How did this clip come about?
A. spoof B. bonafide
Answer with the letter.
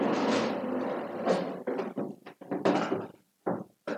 B